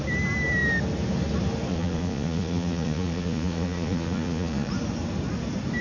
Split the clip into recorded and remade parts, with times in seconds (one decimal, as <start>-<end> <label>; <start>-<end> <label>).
0.0-1.7 recorded; 1.7-4.7 remade; 4.7-5.8 recorded